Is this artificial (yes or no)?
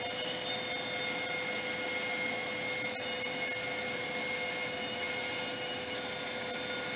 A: no